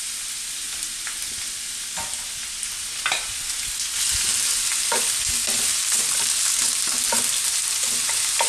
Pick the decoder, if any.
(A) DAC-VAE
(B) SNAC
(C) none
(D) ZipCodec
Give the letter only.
C